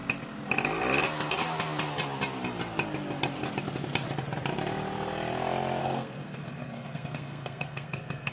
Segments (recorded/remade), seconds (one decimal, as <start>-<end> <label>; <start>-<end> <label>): 0.0-5.8 recorded; 5.8-8.3 remade